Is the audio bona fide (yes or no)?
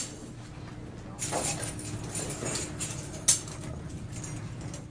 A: yes